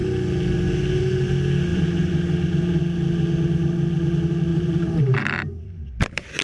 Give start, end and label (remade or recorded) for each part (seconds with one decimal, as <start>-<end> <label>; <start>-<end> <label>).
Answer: 0.0-1.7 recorded; 1.7-2.8 remade; 2.8-4.5 recorded; 4.5-5.2 remade; 5.2-6.4 recorded